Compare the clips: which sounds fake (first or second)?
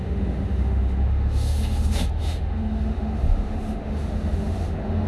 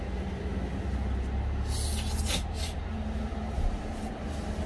first